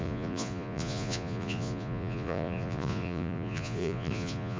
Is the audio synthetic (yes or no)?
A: yes